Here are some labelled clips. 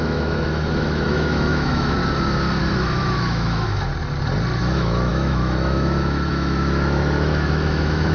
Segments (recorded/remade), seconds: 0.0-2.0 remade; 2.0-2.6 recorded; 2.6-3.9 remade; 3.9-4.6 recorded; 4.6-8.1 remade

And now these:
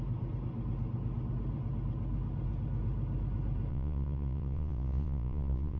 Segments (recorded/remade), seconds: 0.0-3.7 recorded; 3.7-5.8 remade

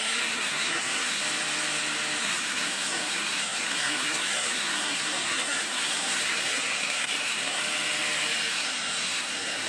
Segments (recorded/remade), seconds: 0.0-1.2 remade; 1.2-2.2 recorded; 2.2-7.6 remade; 7.6-8.5 recorded; 8.5-9.7 remade

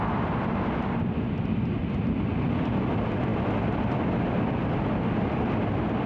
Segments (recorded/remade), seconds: 0.0-6.1 recorded